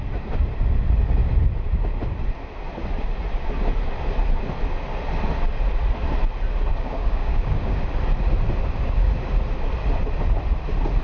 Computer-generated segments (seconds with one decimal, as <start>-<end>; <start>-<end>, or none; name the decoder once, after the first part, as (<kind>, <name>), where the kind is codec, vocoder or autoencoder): 6.7-7.8 (codec, DAC)